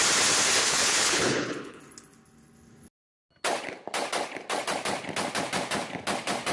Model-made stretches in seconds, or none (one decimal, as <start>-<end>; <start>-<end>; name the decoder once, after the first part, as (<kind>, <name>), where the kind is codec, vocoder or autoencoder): 0.6-1.8 (codec, HILCodec)